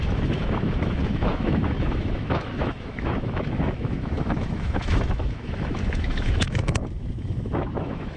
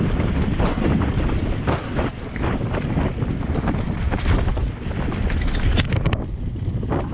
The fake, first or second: first